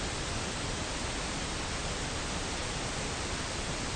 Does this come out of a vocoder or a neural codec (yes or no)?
no